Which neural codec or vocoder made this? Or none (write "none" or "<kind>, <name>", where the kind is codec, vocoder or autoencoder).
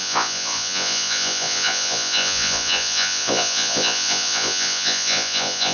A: vocoder, Vocos